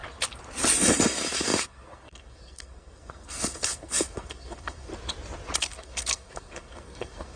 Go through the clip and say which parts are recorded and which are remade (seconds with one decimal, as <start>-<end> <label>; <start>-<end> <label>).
0.0-1.1 recorded; 1.1-4.9 remade; 4.9-5.6 recorded; 5.6-7.4 remade